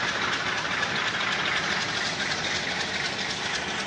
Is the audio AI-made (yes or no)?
no